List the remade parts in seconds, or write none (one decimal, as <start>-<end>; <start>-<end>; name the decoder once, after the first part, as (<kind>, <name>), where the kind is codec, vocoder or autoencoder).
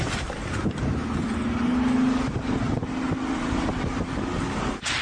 none